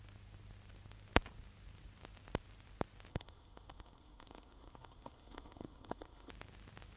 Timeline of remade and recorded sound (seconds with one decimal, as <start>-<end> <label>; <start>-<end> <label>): 0.0-3.1 recorded; 3.1-6.3 remade; 6.3-7.0 recorded